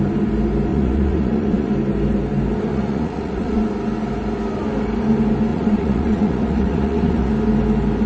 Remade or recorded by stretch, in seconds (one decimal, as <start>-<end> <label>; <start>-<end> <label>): 0.0-0.7 recorded; 0.7-1.7 remade; 1.7-2.7 recorded; 2.7-3.6 remade; 3.6-5.5 recorded; 5.5-7.3 remade; 7.3-8.1 recorded